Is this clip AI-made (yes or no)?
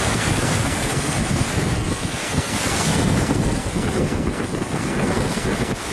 yes